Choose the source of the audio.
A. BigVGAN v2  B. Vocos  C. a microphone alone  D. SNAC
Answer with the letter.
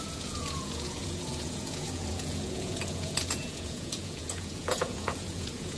B